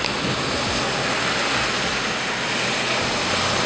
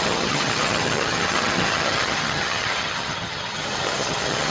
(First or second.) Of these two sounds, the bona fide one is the first